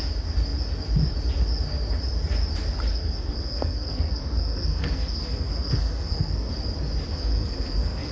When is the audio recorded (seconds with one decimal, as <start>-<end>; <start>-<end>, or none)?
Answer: 0.0-2.9; 6.5-7.1